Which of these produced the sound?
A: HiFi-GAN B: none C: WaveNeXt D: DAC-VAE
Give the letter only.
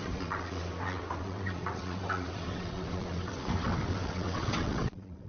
C